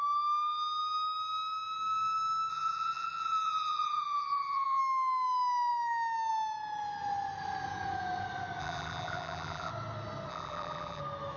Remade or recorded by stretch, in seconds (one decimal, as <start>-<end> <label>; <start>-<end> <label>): 0.0-2.5 recorded; 2.5-4.8 remade; 4.8-8.6 recorded; 8.6-9.7 remade; 9.7-10.3 recorded; 10.3-11.0 remade; 11.0-11.4 recorded